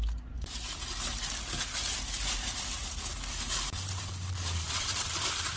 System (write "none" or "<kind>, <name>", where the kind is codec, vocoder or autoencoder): none